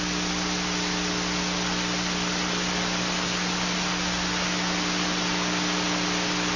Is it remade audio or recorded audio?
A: recorded